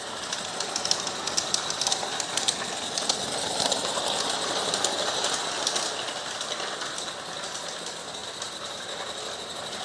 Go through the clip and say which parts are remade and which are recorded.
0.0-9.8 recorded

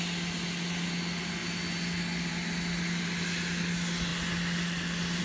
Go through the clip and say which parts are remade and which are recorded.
0.0-5.2 recorded

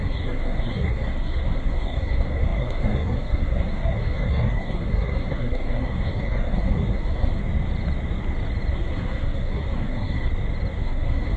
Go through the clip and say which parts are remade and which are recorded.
0.0-7.4 remade; 7.4-8.7 recorded; 8.7-10.3 remade; 10.3-10.8 recorded; 10.8-11.4 remade

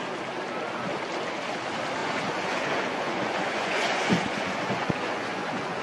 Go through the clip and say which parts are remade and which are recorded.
0.0-2.0 recorded; 2.0-5.8 remade

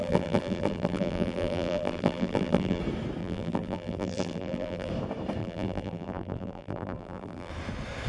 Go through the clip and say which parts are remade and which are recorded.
0.0-2.8 remade; 2.8-3.2 recorded; 3.2-4.9 remade; 4.9-5.4 recorded; 5.4-7.5 remade; 7.5-8.1 recorded

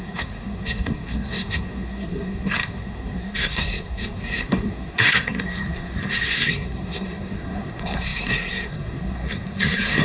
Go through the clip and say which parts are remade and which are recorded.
0.0-10.0 remade

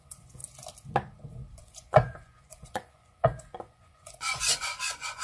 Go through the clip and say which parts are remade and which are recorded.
0.0-0.4 remade; 0.4-1.6 recorded; 1.6-5.2 remade